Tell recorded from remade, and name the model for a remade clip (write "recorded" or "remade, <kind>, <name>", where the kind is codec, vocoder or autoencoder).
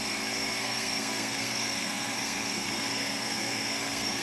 remade, codec, SNAC